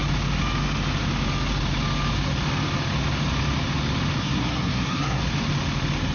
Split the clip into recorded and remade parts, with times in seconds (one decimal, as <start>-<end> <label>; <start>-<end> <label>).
0.0-4.2 recorded; 4.2-5.2 remade; 5.2-6.1 recorded